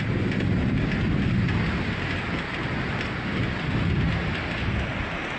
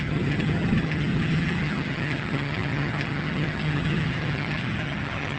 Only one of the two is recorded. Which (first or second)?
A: first